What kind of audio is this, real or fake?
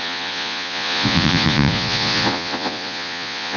fake